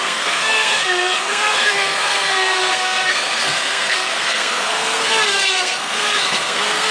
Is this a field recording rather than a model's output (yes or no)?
no